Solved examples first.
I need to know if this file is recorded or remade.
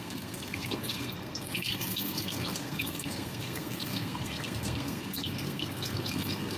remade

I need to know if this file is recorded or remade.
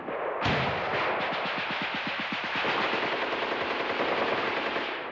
recorded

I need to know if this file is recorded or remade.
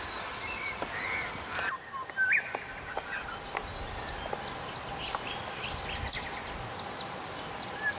recorded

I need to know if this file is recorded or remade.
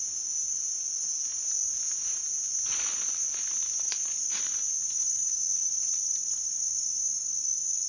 recorded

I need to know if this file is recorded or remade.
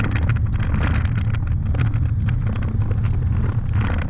recorded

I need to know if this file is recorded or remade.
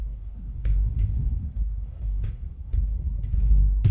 remade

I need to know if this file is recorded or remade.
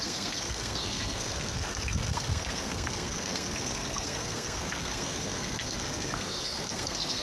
remade